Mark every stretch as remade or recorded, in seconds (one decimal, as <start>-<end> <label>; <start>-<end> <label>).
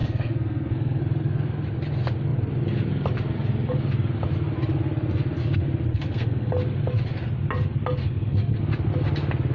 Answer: 0.0-1.0 remade; 1.0-5.9 recorded; 5.9-6.5 remade; 6.5-8.0 recorded; 8.0-8.6 remade; 8.6-9.5 recorded